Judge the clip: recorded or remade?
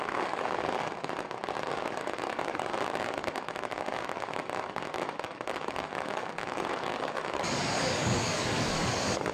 remade